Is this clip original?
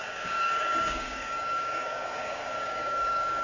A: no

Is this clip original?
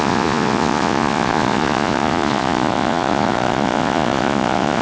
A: no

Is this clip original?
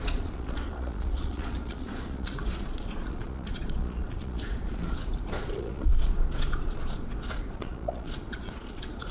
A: no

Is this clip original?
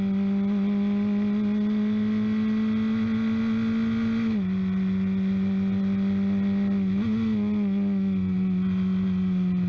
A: yes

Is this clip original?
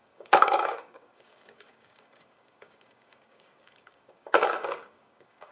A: no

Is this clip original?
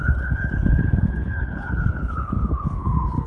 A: no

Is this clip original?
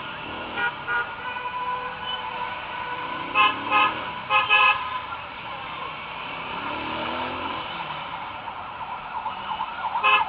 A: no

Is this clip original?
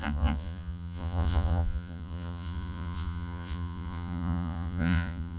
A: no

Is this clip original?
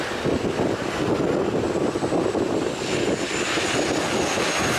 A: yes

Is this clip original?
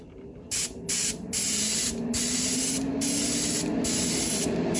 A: yes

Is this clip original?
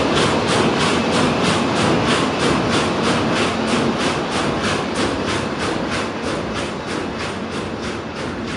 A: yes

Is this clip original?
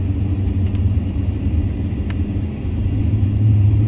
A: no